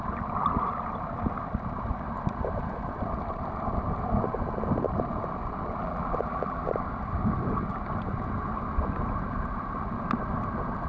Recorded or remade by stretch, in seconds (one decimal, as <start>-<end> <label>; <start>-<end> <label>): 0.0-5.8 recorded; 5.8-6.7 remade; 6.7-10.9 recorded